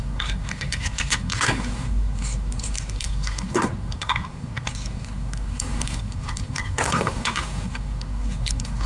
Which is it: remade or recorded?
remade